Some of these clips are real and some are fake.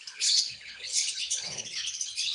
fake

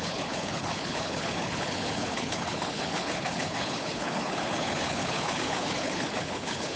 fake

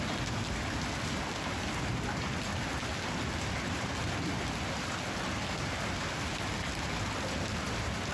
real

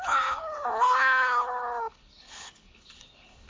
fake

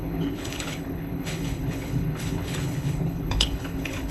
fake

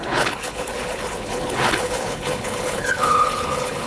fake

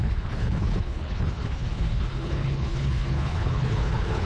fake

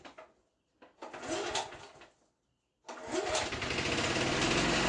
real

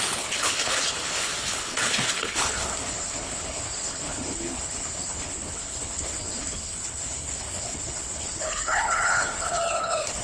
fake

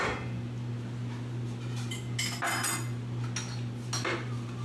real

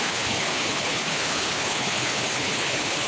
fake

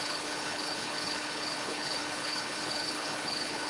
fake